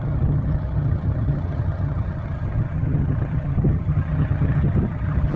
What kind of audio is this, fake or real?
fake